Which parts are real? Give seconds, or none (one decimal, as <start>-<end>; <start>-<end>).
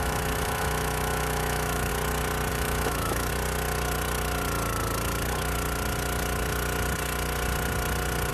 1.9-2.5; 3.3-8.3